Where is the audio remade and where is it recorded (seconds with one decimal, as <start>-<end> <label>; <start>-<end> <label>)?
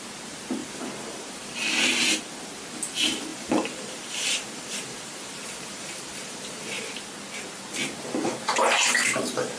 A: 0.0-0.6 recorded; 0.6-2.2 remade; 2.2-3.3 recorded; 3.3-6.8 remade; 6.8-9.6 recorded